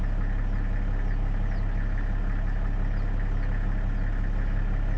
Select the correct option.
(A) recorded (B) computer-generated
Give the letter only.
A